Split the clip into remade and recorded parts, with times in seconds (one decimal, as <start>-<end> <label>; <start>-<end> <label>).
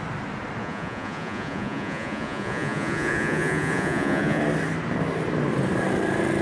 0.0-0.6 recorded; 0.6-4.4 remade; 4.4-6.4 recorded